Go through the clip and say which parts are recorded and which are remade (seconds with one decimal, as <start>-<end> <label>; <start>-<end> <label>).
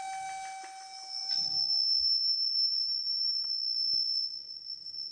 0.0-1.2 recorded; 1.2-4.3 remade; 4.3-5.1 recorded